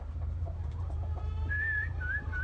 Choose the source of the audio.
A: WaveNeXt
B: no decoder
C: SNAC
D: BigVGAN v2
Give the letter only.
D